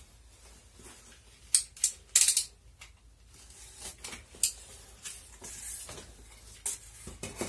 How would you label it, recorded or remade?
recorded